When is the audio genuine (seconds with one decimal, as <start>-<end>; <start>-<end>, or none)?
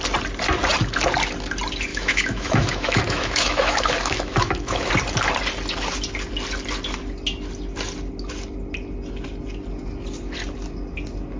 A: 0.0-1.9; 4.9-11.4